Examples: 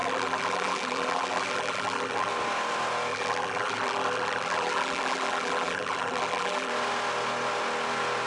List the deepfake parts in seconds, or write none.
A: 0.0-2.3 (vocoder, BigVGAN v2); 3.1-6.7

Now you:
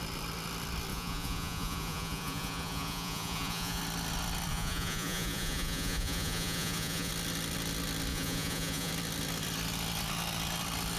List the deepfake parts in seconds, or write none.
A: 0.9-3.8 (vocoder, Vocos); 4.5-7.1; 8.1-8.9

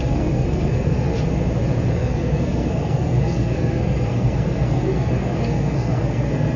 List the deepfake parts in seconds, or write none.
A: 0.0-1.1 (codec, SNAC); 1.9-6.6

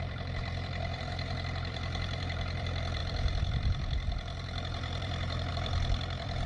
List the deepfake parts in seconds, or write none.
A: 0.0-6.5 (vocoder, BigVGAN v2)

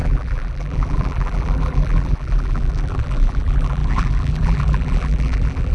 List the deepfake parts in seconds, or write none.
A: 0.0-5.7 (vocoder, BigVGAN v2)

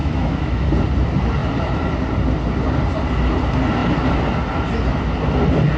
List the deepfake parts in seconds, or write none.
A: 0.0-0.7 (autoencoder, DAC-VAE)

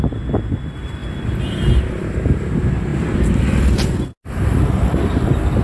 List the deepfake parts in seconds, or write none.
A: none

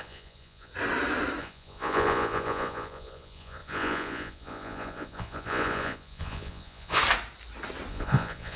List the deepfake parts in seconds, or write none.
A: 0.0-0.7 (vocoder, Vocos); 1.4-7.0; 7.9-8.6